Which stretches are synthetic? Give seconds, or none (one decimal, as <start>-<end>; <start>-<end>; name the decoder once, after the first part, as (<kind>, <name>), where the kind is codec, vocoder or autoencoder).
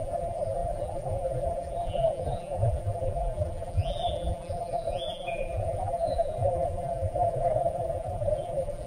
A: 0.0-8.9 (vocoder, BigVGAN v2)